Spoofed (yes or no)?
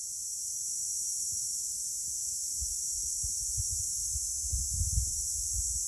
no